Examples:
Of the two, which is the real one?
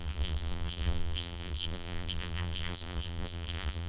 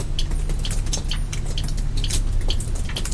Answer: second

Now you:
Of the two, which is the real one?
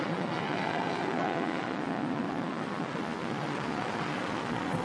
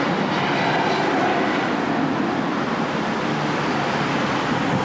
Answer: second